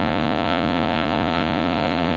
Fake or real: fake